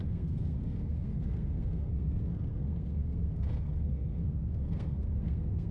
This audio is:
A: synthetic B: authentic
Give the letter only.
A